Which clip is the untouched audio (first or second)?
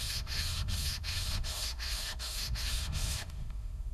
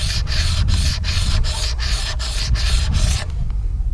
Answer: second